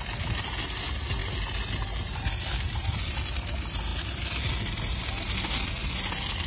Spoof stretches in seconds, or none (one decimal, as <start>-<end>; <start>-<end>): none